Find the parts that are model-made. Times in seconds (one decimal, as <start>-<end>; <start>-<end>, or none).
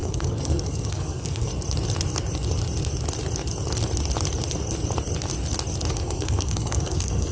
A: 0.0-1.5; 5.9-7.3